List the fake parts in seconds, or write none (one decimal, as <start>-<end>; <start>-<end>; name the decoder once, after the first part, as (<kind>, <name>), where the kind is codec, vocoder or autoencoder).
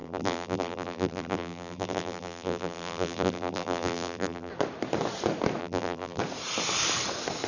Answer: 0.0-4.5 (vocoder, BigVGAN v2); 5.6-6.2